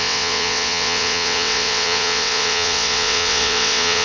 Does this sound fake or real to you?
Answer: fake